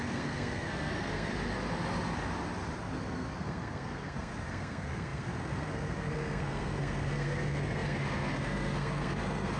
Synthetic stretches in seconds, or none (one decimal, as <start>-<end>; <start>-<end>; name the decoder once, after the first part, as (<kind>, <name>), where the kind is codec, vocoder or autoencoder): 0.0-1.3 (codec, SNAC); 2.9-9.6